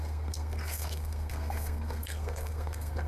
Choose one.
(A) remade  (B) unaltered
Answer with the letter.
A